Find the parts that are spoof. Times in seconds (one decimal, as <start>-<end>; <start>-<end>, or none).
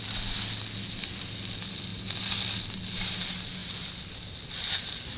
none